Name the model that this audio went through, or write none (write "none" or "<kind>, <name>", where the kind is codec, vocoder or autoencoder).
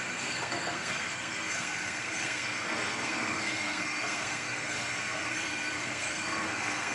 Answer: codec, SNAC